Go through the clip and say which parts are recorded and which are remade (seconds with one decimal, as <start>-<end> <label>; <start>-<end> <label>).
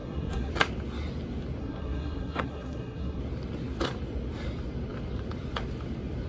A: 0.0-0.5 remade; 0.5-1.6 recorded; 1.6-3.2 remade; 3.2-6.3 recorded